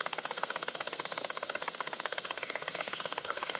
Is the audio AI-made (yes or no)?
yes